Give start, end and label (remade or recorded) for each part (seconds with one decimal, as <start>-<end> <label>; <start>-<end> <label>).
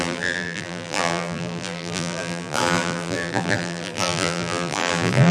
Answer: 0.0-5.3 remade